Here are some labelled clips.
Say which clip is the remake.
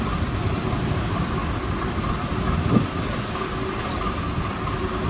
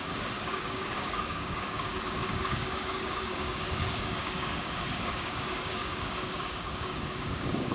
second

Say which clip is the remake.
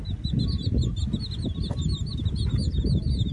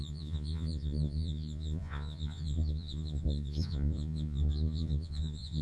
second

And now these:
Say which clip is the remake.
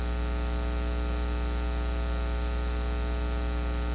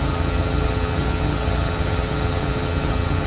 second